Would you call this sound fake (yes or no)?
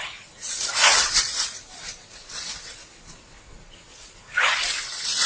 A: yes